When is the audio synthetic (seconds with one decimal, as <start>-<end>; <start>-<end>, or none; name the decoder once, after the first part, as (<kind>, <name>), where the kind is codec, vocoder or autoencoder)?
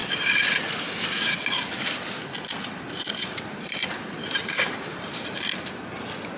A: 0.0-0.9 (vocoder, BigVGAN v2); 3.2-6.4